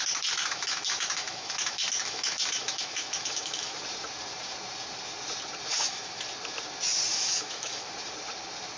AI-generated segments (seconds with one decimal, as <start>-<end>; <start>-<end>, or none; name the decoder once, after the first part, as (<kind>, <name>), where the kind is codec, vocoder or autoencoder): 0.4-3.8 (autoencoder, DAC-VAE); 5.7-6.2; 7.1-7.9